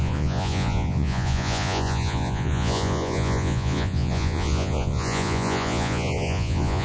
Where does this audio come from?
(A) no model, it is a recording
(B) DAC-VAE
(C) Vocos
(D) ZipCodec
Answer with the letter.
C